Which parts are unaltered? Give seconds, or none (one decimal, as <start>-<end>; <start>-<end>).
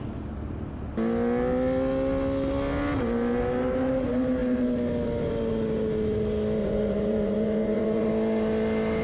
0.0-6.6; 8.1-9.0